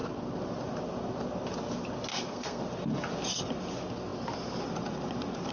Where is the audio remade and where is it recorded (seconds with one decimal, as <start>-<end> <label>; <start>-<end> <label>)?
0.0-2.1 recorded; 2.1-2.6 remade; 2.6-5.5 recorded